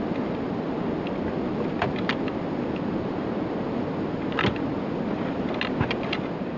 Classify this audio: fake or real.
real